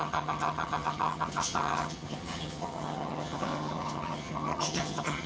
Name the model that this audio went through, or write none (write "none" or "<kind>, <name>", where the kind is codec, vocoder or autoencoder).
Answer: vocoder, HiFi-GAN